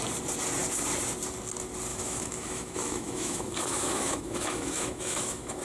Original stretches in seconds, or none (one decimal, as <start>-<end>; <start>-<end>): 0.0-1.9